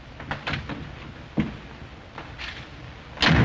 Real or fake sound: real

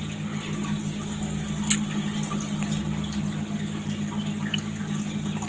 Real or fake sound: real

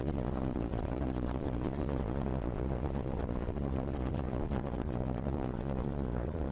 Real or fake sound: fake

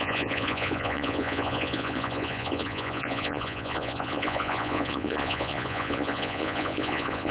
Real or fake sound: fake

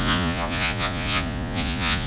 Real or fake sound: fake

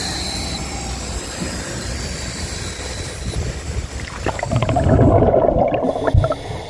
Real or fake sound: real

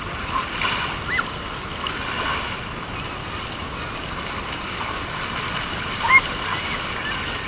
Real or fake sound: real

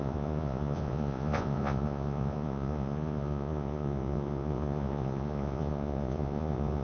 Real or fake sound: fake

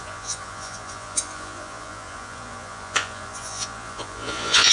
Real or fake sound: fake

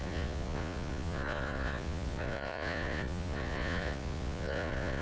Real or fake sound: fake